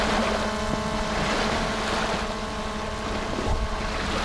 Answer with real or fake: real